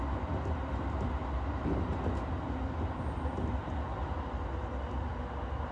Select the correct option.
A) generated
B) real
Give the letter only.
B